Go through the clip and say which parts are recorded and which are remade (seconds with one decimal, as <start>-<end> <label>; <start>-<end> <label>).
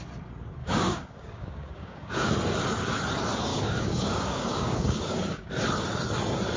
0.0-0.6 recorded; 0.6-2.3 remade; 2.3-3.5 recorded; 3.5-5.5 remade; 5.5-6.6 recorded